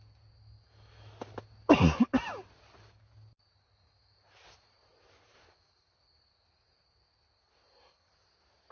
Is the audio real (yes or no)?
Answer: yes